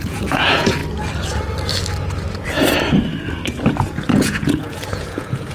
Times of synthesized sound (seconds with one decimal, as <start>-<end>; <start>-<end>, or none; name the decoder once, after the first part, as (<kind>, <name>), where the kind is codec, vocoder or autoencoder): 0.0-0.8 (vocoder, Vocos); 4.1-5.5